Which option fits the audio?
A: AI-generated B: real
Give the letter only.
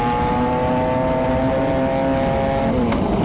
B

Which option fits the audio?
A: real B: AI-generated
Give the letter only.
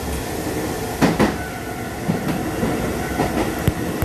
A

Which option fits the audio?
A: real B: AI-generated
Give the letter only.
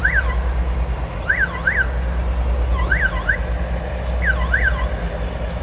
A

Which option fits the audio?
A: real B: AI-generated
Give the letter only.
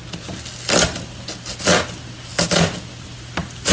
A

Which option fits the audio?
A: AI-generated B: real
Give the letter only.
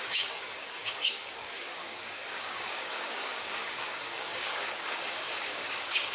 A